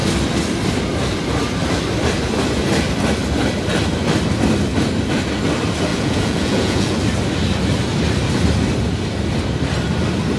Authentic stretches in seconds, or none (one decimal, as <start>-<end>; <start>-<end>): 0.0-5.9; 7.0-10.4